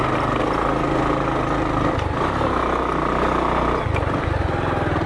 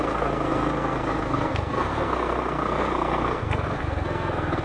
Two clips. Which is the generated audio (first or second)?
second